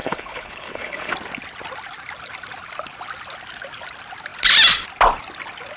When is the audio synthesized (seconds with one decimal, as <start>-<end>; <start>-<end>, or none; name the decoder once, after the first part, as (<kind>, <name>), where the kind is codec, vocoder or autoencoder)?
0.0-1.1 (codec, HILCodec)